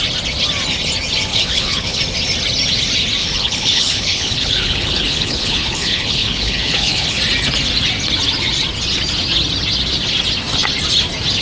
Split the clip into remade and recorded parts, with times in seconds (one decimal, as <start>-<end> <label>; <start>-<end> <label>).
0.0-1.3 recorded; 1.3-2.0 remade; 2.0-3.2 recorded; 3.2-7.2 remade; 7.2-11.4 recorded